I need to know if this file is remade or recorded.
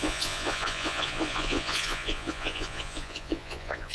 remade